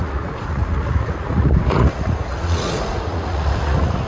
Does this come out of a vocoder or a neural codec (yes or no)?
yes